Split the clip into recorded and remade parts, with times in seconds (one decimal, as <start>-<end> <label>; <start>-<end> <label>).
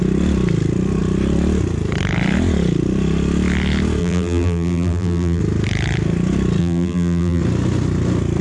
0.0-4.0 recorded; 4.0-5.4 remade; 5.4-6.6 recorded; 6.6-7.4 remade; 7.4-8.4 recorded